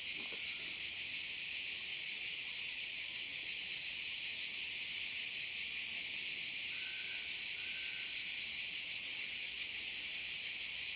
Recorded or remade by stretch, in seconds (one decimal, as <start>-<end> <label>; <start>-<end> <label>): 0.0-1.9 recorded; 1.9-4.0 remade; 4.0-8.5 recorded; 8.5-9.8 remade; 9.8-11.0 recorded